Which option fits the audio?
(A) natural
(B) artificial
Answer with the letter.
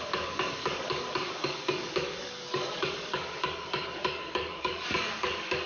B